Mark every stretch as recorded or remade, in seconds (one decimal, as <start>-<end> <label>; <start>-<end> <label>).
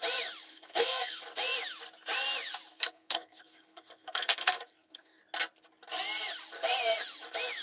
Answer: 0.0-0.5 recorded; 0.5-1.2 remade; 1.2-2.7 recorded; 2.7-5.2 remade; 5.2-7.6 recorded